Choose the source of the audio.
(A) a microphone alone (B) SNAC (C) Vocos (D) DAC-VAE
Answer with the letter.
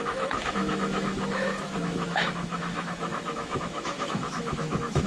D